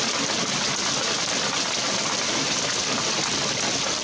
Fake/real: real